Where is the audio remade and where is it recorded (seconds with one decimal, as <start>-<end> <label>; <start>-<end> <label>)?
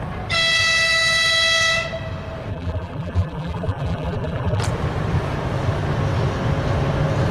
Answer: 0.0-2.5 recorded; 2.5-4.6 remade; 4.6-7.3 recorded